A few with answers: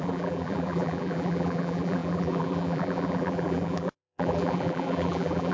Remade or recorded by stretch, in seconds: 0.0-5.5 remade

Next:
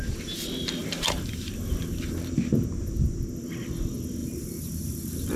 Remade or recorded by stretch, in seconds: 0.0-0.8 recorded; 0.8-2.5 remade; 2.5-4.2 recorded; 4.2-5.4 remade

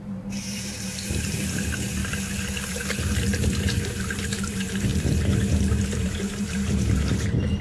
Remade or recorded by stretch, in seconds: 0.0-2.0 remade; 2.0-2.7 recorded; 2.7-4.9 remade; 4.9-5.9 recorded; 5.9-7.6 remade